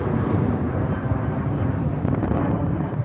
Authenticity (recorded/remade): remade